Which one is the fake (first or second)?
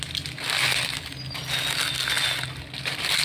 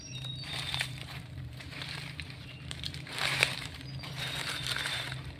second